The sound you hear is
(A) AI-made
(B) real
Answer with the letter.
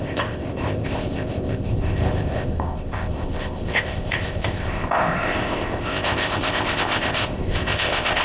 A